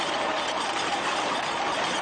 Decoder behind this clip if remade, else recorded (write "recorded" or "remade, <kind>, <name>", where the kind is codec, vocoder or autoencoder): recorded